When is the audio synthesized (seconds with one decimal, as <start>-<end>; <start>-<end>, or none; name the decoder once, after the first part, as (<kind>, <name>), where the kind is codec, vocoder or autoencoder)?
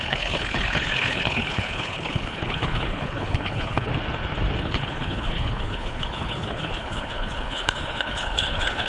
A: 0.0-3.9 (codec, HILCodec); 4.6-8.9